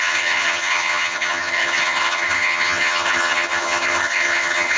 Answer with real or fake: fake